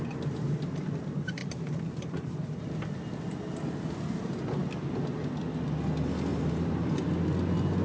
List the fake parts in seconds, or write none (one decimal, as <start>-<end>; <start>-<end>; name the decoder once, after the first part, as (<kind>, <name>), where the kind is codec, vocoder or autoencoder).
1.4-2.6 (vocoder, BigVGAN v2); 6.3-6.9